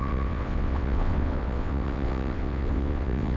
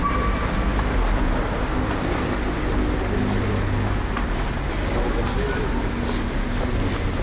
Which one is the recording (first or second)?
second